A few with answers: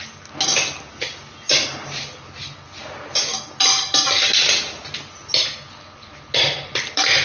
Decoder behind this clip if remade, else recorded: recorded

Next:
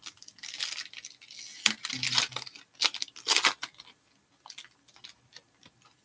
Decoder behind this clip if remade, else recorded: recorded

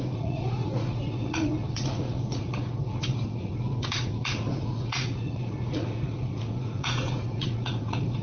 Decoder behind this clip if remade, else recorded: remade, vocoder, Vocos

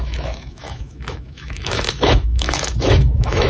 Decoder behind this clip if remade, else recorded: remade, autoencoder, DAC-VAE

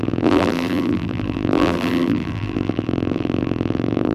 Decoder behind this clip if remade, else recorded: remade, vocoder, BigVGAN v2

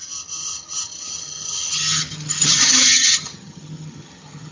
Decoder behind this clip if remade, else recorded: remade, vocoder, HiFi-GAN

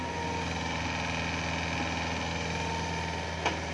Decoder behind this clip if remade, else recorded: recorded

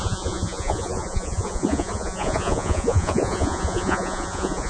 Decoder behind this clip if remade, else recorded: remade, vocoder, Vocos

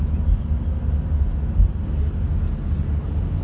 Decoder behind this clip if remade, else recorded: recorded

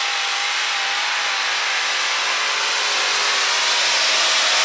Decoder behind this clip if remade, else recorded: recorded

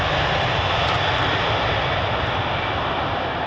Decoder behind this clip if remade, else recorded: recorded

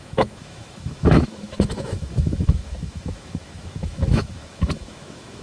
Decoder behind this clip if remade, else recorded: remade, autoencoder, DAC-VAE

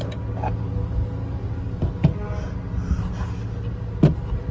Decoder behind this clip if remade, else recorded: recorded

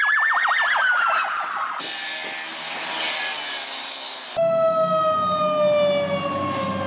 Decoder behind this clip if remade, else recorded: recorded